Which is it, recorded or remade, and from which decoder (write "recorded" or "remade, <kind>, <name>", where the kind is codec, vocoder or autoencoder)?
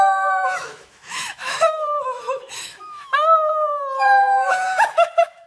remade, autoencoder, DAC-VAE